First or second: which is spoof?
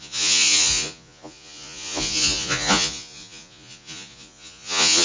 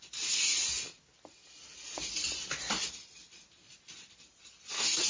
first